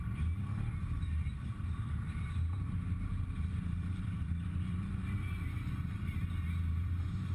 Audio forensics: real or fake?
fake